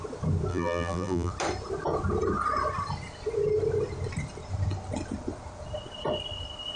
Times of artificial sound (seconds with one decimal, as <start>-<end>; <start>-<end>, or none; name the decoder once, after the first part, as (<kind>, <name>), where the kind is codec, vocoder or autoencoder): 0.5-1.3 (vocoder, BigVGAN v2)